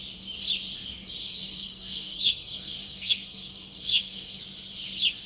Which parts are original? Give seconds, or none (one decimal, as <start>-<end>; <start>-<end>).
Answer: 0.0-1.2; 4.4-5.3